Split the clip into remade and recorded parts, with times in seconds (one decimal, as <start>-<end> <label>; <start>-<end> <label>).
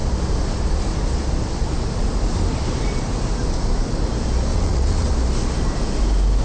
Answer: 0.0-4.5 recorded; 4.5-5.1 remade; 5.1-6.4 recorded